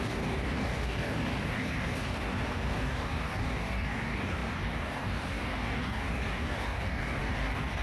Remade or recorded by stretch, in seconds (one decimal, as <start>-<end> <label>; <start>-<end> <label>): 0.0-7.8 remade